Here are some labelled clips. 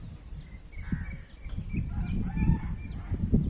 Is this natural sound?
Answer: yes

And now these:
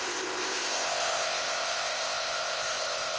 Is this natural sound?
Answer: no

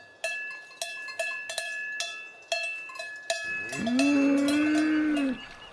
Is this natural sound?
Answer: yes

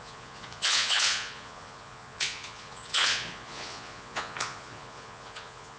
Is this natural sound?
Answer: no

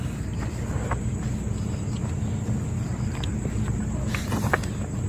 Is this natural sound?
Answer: yes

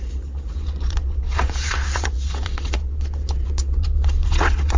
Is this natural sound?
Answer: no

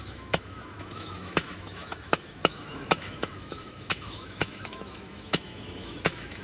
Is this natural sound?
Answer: no